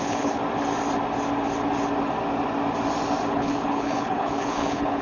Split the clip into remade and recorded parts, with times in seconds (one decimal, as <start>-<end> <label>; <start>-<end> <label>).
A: 0.0-0.4 remade; 0.4-3.3 recorded; 3.3-5.0 remade